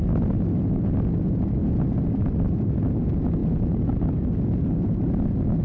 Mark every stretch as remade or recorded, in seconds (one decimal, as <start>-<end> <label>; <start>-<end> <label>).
0.0-5.6 recorded